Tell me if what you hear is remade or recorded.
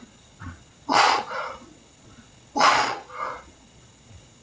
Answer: remade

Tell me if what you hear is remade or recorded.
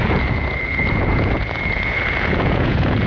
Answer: remade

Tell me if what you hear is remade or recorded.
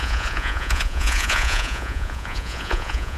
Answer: remade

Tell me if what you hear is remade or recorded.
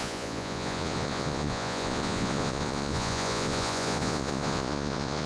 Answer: remade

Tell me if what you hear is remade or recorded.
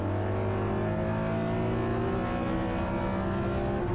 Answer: recorded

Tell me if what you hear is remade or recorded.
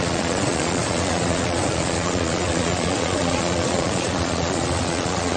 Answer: remade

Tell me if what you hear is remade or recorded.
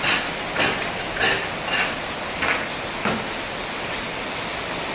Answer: recorded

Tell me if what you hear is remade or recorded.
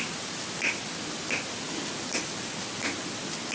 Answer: recorded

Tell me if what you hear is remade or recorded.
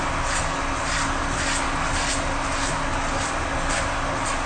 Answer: recorded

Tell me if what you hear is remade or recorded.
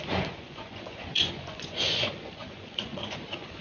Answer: remade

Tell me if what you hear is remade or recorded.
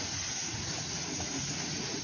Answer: remade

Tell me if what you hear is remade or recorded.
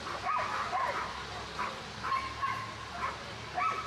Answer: recorded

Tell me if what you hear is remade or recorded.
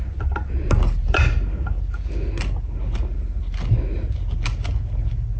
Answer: recorded